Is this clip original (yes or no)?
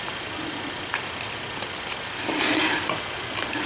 yes